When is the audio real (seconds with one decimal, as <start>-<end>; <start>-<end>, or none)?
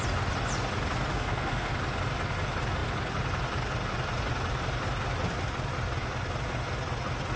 0.0-1.1; 1.7-7.4